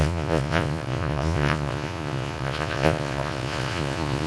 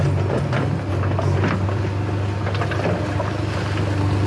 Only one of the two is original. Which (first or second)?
second